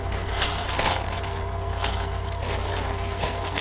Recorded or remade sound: remade